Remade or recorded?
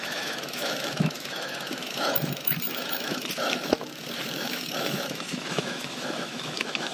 remade